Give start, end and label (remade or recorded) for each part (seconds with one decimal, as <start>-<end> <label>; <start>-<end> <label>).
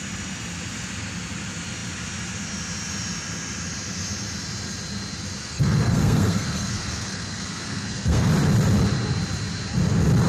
0.0-5.4 recorded; 5.4-8.3 remade; 8.3-10.3 recorded